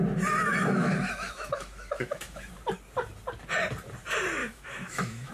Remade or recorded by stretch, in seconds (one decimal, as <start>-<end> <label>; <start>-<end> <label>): 0.0-0.5 recorded; 0.5-2.5 remade; 2.5-4.4 recorded; 4.4-5.3 remade